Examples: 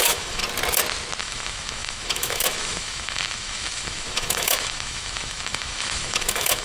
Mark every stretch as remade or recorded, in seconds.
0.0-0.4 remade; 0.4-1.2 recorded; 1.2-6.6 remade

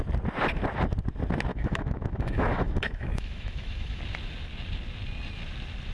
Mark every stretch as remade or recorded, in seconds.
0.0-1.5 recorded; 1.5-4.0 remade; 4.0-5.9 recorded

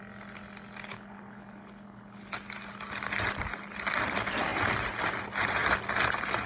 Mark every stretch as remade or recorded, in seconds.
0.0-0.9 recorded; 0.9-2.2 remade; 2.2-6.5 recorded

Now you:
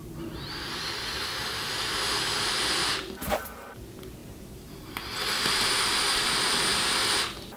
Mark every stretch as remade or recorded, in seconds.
0.0-4.2 recorded; 4.2-4.9 remade; 4.9-7.6 recorded